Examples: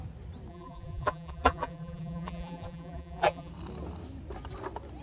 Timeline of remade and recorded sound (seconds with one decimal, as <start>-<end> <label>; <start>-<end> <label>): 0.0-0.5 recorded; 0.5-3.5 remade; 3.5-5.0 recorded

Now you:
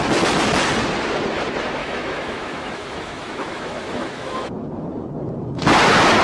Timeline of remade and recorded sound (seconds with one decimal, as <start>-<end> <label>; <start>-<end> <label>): 0.0-1.8 recorded; 1.8-4.5 remade; 4.5-6.2 recorded

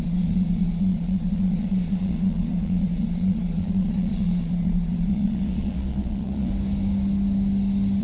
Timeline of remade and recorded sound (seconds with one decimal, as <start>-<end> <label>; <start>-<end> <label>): 0.0-6.5 remade; 6.5-8.0 recorded

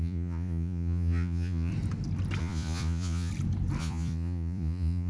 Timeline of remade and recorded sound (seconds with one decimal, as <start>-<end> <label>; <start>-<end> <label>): 0.0-1.7 remade; 1.7-2.4 recorded; 2.4-3.3 remade; 3.3-3.8 recorded; 3.8-5.1 remade

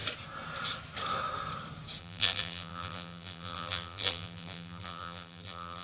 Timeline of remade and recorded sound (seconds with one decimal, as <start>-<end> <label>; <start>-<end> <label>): 0.0-2.0 recorded; 2.0-5.8 remade

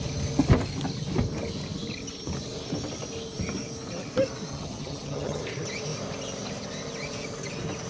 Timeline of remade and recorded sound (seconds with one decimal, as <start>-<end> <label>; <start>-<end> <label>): 0.0-4.5 recorded; 4.5-5.4 remade; 5.4-7.9 recorded

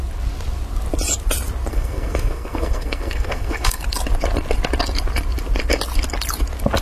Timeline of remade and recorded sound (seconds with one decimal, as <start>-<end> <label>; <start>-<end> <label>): 0.0-1.7 recorded; 1.7-3.8 remade; 3.8-6.8 recorded

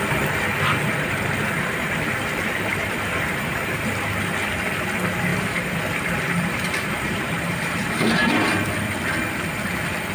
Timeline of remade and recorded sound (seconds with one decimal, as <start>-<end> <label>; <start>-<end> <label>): 0.0-2.7 recorded; 2.7-4.1 remade; 4.1-5.3 recorded; 5.3-8.5 remade; 8.5-10.1 recorded